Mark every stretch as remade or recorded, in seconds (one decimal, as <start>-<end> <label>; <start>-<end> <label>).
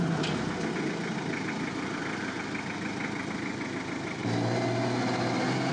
0.0-5.7 recorded